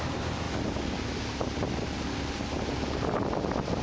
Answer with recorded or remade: recorded